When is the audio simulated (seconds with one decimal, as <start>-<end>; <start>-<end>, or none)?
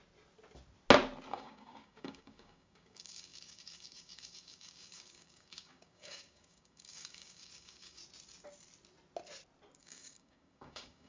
1.3-8.0; 9.8-11.1